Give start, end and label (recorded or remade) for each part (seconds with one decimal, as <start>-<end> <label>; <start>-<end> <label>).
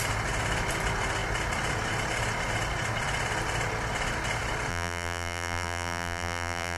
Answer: 0.0-4.7 recorded; 4.7-6.8 remade